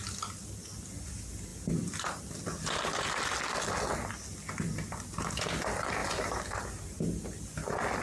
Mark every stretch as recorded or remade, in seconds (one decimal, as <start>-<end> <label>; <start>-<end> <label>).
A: 0.0-1.5 recorded; 1.5-2.2 remade; 2.2-6.0 recorded; 6.0-7.1 remade; 7.1-8.0 recorded